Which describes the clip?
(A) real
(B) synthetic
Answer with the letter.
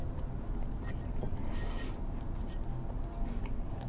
A